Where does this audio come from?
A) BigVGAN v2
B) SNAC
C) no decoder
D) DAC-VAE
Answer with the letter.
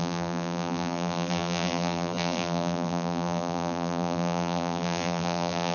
A